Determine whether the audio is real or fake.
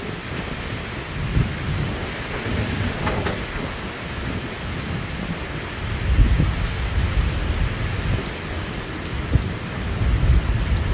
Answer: real